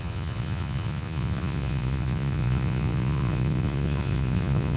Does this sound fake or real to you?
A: fake